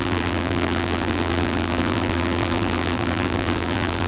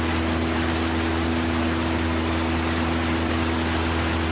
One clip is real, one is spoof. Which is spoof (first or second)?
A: first